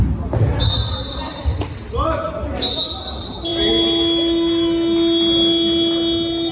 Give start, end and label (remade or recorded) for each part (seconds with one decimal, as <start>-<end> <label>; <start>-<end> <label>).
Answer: 0.0-6.5 recorded